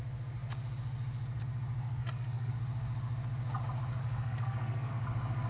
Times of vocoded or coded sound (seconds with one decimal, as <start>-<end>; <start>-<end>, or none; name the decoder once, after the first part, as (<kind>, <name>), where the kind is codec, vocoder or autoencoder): 1.8-2.5 (codec, SNAC); 4.0-4.9